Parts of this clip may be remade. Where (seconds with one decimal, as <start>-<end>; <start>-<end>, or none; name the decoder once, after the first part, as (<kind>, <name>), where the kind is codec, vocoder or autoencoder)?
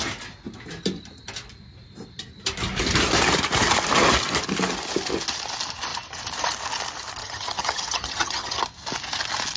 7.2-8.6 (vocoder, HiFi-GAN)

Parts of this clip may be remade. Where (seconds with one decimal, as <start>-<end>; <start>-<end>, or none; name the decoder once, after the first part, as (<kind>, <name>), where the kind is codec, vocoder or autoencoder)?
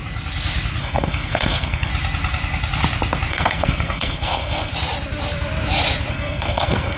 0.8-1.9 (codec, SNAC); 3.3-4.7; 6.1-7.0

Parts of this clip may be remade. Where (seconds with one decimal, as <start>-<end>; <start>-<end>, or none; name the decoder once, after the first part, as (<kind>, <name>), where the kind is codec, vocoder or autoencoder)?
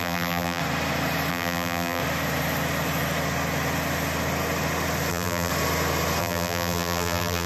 0.0-0.6 (vocoder, BigVGAN v2); 1.3-2.0; 5.1-5.5; 6.2-7.5